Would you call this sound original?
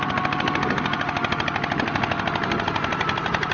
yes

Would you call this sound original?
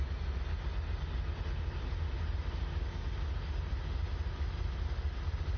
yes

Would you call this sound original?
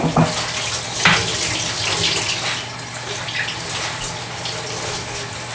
yes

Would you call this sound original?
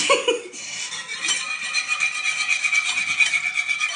yes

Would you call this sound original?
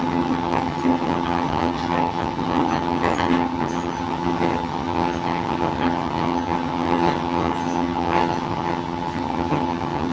no